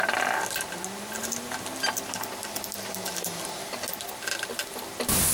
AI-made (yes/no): no